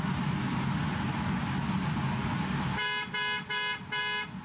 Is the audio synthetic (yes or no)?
no